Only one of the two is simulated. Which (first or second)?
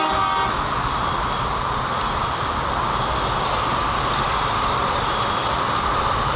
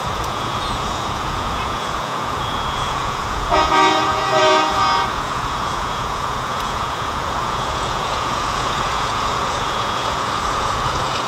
second